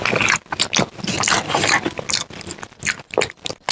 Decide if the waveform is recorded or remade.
recorded